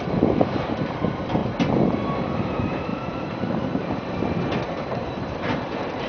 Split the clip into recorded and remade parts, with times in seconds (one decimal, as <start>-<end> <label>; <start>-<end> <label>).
0.0-1.4 remade; 1.4-2.5 recorded; 2.5-6.1 remade